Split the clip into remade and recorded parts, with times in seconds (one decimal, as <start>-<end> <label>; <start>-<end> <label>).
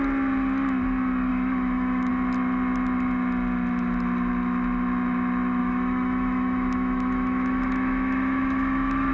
0.0-1.3 recorded; 1.3-2.1 remade; 2.1-5.6 recorded; 5.6-9.1 remade